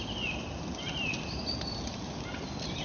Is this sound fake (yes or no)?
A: no